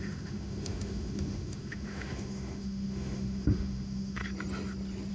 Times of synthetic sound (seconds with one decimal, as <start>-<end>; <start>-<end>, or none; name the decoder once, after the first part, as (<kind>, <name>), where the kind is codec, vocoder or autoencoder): 0.0-4.2 (autoencoder, DAC-VAE)